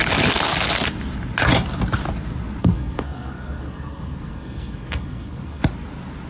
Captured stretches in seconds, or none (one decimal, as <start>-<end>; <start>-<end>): 0.0-2.6; 5.6-6.3